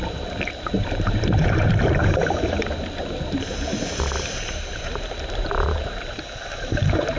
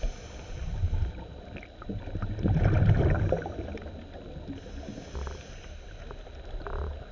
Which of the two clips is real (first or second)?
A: second